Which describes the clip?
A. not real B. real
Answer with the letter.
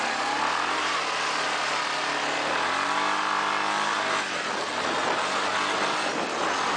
B